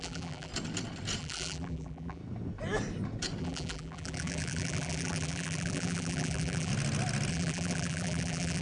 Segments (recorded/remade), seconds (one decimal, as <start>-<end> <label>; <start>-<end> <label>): 0.0-0.5 remade; 0.5-1.2 recorded; 1.2-2.2 remade; 2.2-3.4 recorded; 3.4-6.7 remade; 6.7-7.3 recorded; 7.3-8.6 remade